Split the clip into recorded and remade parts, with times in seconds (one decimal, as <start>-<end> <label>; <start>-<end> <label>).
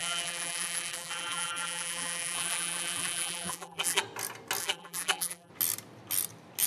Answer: 0.0-4.0 remade; 4.0-4.6 recorded; 4.6-5.5 remade; 5.5-6.7 recorded